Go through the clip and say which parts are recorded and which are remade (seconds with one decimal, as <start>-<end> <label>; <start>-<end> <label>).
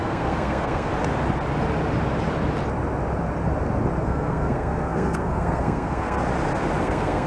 0.0-0.9 remade; 0.9-4.0 recorded; 4.0-6.2 remade; 6.2-6.8 recorded; 6.8-7.3 remade